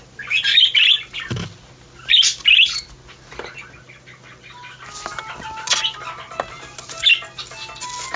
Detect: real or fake real